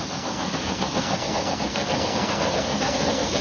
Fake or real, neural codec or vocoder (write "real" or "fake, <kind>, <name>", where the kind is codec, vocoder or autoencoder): fake, codec, SNAC